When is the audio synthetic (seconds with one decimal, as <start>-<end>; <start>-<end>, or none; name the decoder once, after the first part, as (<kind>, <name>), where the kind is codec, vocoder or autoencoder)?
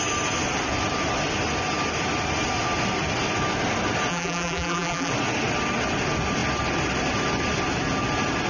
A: 4.1-5.1 (vocoder, BigVGAN v2)